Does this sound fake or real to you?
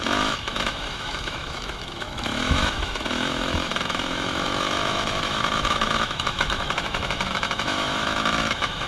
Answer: fake